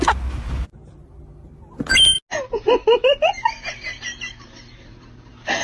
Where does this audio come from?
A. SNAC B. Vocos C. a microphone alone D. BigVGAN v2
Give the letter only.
C